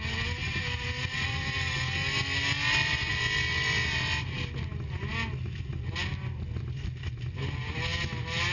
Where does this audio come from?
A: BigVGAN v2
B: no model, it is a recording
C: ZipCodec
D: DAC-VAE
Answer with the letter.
B